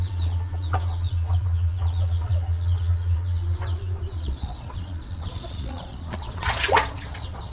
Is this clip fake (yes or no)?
yes